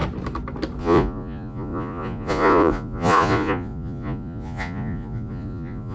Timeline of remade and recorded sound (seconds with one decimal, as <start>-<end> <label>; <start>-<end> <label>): 0.0-0.8 recorded; 0.8-5.9 remade